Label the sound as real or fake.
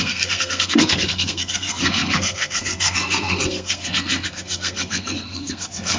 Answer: fake